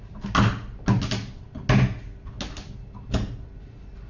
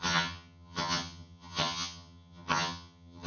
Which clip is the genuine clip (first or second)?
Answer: first